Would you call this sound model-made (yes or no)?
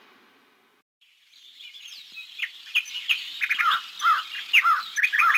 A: yes